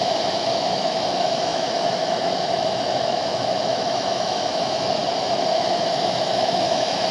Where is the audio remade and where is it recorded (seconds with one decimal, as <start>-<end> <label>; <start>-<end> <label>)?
0.0-5.0 remade; 5.0-5.5 recorded; 5.5-7.1 remade